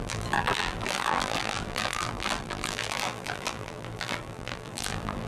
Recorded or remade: remade